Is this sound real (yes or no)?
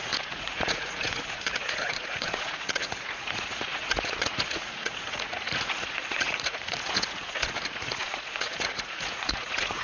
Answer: no